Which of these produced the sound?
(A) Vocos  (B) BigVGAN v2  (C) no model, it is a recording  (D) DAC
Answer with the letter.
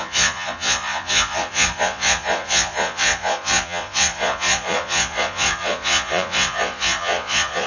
A